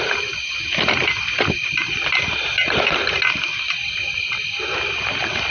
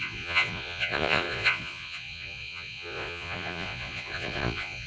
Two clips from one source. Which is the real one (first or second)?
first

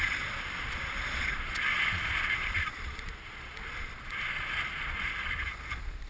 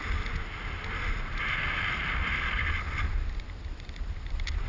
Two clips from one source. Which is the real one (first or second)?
second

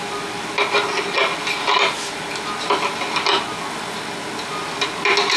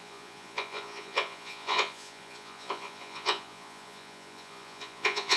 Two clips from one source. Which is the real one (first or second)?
first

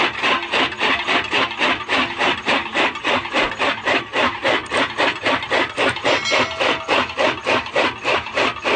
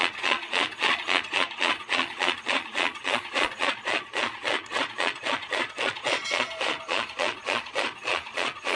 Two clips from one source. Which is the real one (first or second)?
first